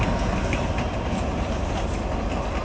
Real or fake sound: real